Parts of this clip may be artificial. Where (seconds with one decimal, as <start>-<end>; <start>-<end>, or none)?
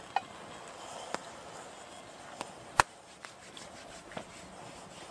none